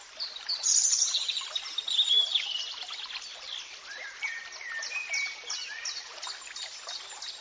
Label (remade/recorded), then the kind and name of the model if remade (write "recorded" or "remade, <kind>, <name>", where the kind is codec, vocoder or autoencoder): recorded